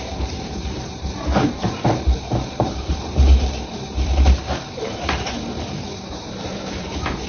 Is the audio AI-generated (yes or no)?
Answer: yes